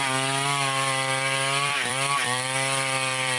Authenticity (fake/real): fake